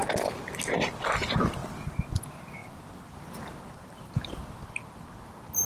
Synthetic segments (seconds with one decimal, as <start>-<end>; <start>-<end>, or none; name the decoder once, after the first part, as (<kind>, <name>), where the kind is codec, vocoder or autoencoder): 1.6-2.2 (vocoder, BigVGAN v2); 2.6-4.1